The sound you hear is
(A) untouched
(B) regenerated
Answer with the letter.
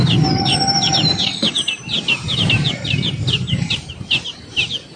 B